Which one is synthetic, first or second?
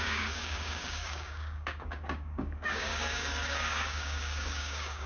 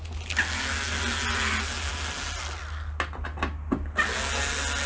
first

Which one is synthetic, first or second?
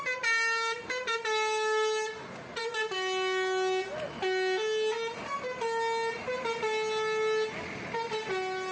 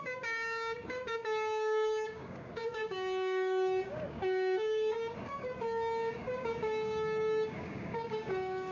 second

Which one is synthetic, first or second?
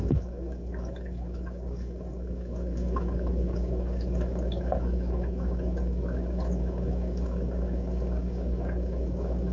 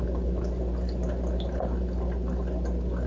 first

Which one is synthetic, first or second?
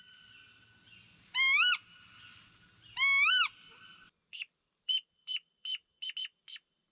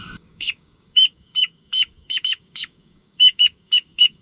second